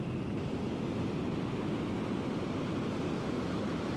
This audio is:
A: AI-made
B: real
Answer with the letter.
B